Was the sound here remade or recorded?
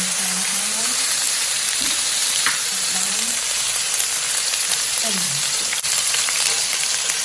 remade